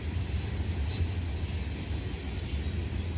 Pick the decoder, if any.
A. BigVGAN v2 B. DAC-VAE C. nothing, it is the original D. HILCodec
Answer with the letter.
C